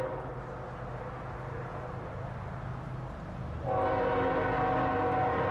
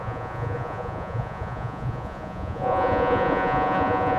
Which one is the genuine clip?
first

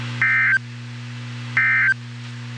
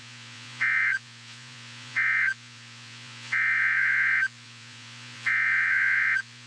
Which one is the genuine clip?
first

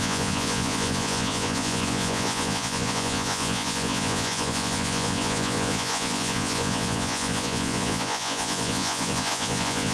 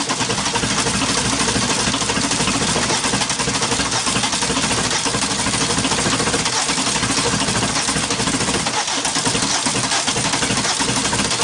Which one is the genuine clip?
second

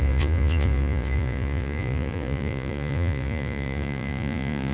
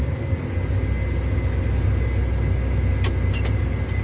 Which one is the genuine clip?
second